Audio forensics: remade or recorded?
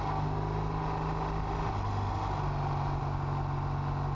recorded